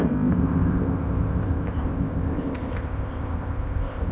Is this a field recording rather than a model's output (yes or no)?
no